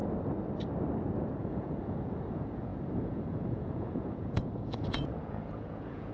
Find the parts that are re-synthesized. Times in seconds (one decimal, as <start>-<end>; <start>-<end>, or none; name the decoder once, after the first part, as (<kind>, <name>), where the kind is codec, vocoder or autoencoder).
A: 1.4-6.1 (vocoder, Vocos)